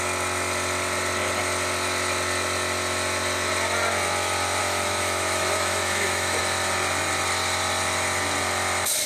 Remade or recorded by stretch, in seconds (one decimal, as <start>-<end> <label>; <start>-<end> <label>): 0.0-4.6 recorded; 4.6-6.4 remade; 6.4-9.1 recorded

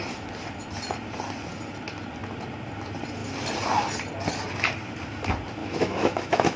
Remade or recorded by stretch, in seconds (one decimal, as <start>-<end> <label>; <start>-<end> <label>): 0.0-5.6 recorded; 5.6-6.6 remade

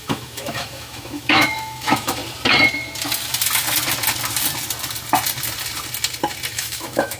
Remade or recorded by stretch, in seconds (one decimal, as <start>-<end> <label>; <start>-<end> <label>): 0.0-2.2 remade; 2.2-6.5 recorded; 6.5-7.2 remade

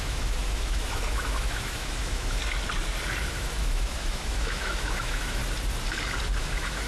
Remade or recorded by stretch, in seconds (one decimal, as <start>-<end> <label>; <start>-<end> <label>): 0.0-2.4 remade; 2.4-3.2 recorded; 3.2-5.4 remade; 5.4-6.4 recorded; 6.4-6.9 remade

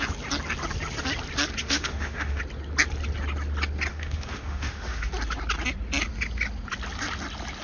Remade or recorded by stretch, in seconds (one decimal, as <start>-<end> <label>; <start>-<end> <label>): 0.0-1.6 recorded; 1.6-2.4 remade; 2.4-3.9 recorded; 3.9-5.1 remade; 5.1-7.6 recorded

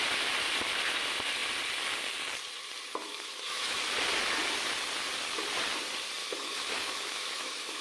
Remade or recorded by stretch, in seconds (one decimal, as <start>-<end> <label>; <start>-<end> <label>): 0.0-3.1 recorded; 3.1-3.8 remade; 3.8-6.2 recorded; 6.2-7.8 remade

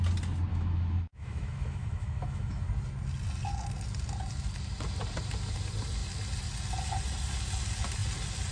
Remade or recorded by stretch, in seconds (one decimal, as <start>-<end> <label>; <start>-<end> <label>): 0.0-0.5 recorded; 0.5-2.7 remade; 2.7-8.5 recorded

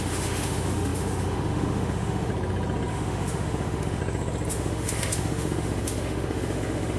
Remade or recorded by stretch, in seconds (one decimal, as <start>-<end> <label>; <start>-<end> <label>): 0.0-2.3 remade; 2.3-2.9 recorded; 2.9-4.0 remade; 4.0-4.5 recorded; 4.5-7.0 remade